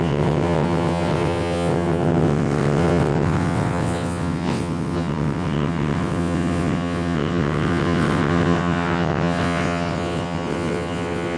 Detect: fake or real fake